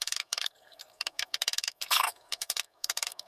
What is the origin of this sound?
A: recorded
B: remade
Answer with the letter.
B